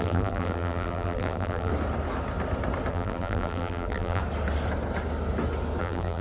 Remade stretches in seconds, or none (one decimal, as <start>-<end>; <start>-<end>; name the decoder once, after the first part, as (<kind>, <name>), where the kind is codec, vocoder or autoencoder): 0.0-1.7 (vocoder, BigVGAN v2); 2.9-4.2; 5.8-6.2